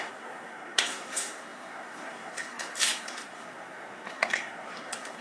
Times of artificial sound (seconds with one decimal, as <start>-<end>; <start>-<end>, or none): 0.0-5.2